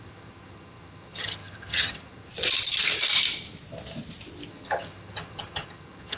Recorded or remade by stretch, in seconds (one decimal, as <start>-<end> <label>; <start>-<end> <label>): 0.0-2.3 remade; 2.3-4.5 recorded; 4.5-6.2 remade